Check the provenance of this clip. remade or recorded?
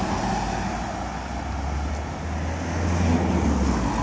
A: recorded